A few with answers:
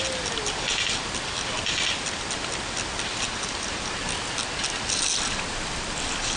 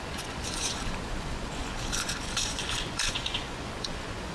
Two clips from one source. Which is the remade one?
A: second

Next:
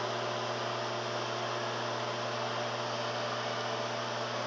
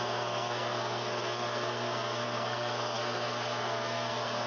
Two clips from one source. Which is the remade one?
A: second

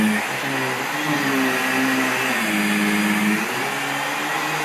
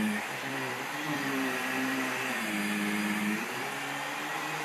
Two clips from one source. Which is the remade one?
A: second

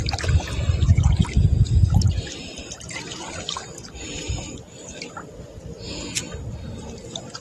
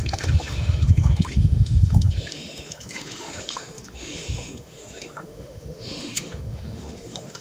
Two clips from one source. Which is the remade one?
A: second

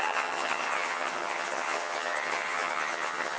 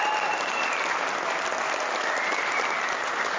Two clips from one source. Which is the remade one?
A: first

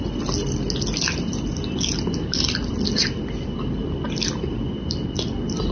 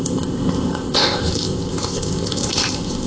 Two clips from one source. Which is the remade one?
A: second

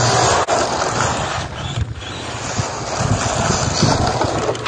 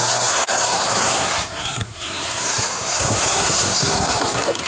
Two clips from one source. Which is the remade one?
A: second